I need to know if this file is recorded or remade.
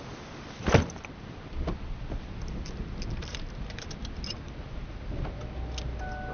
recorded